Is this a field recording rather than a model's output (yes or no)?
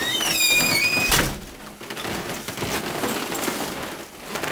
yes